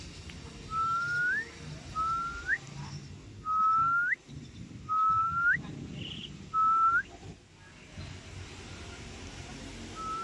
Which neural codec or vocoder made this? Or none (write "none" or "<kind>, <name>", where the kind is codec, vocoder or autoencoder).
none